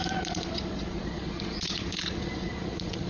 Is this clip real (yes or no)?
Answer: no